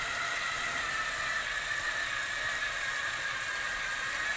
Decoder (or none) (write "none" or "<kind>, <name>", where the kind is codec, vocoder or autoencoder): none